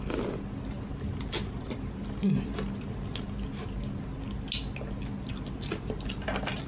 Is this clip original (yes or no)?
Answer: yes